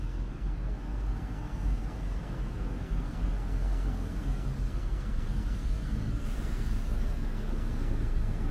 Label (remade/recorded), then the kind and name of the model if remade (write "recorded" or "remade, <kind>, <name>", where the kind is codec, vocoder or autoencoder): remade, codec, SNAC